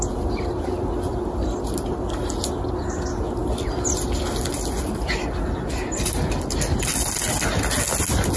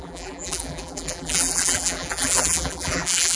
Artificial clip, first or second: second